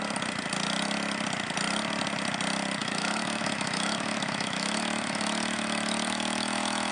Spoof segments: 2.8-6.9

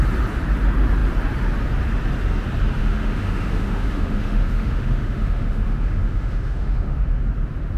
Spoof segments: 2.8-7.2